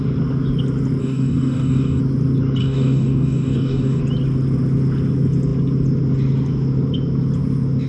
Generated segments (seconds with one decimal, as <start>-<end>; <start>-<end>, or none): 1.0-2.0; 2.6-4.0